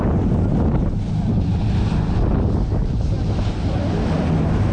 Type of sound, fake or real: real